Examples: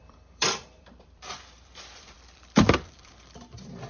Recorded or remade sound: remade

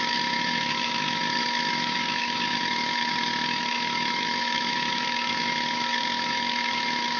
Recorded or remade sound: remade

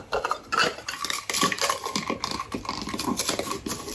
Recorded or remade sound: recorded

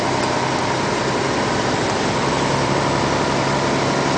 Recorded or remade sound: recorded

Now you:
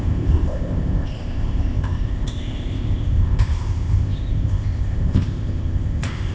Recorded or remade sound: remade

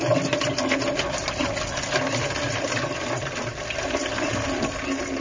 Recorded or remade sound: recorded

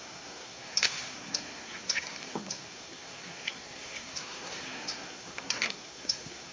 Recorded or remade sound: remade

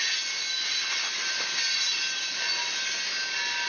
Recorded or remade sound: recorded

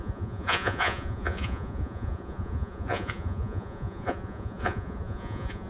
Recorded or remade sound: remade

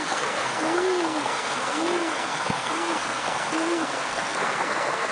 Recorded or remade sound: remade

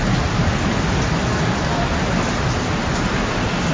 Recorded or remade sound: recorded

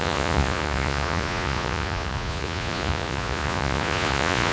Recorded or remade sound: remade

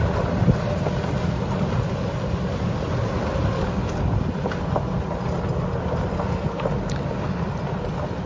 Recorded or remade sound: recorded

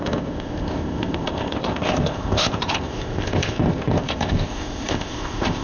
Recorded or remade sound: remade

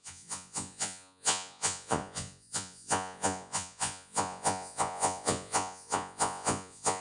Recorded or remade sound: remade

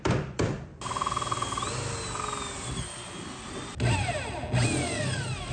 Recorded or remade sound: recorded